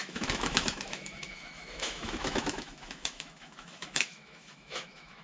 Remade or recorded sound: remade